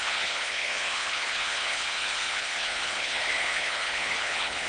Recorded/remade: remade